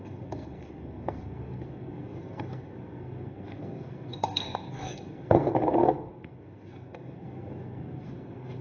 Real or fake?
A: fake